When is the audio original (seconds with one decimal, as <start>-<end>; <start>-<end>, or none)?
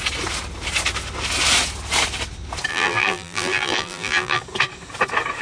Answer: 0.0-2.7; 4.4-5.4